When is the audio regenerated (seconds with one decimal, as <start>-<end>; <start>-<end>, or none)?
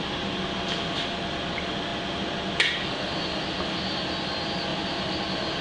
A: none